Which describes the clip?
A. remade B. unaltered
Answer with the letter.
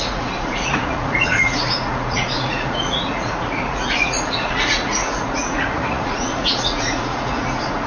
A